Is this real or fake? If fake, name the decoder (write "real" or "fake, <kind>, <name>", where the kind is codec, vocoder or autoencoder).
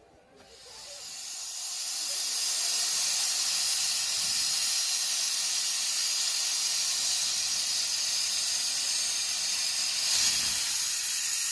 real